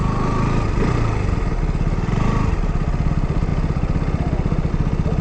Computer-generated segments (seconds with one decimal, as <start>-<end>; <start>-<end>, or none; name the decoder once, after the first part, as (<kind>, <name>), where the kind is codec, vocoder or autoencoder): none